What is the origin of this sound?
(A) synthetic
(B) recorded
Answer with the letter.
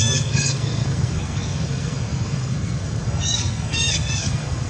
A